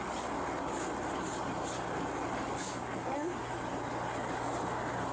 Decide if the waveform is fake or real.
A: real